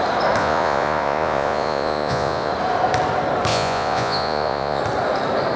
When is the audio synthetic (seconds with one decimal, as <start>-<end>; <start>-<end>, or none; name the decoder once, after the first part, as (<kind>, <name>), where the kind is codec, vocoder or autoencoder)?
0.4-2.5 (vocoder, Vocos); 3.5-4.8